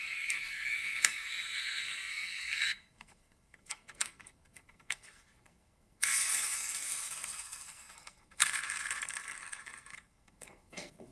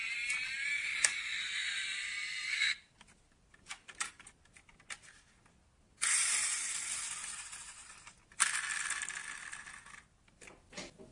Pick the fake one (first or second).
first